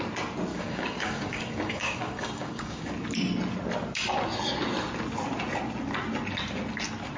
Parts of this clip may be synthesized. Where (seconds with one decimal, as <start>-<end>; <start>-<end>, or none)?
0.5-2.9